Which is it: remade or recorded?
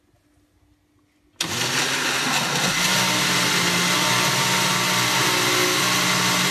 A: recorded